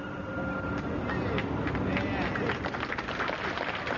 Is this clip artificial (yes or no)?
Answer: no